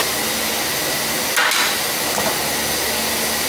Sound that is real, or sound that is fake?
real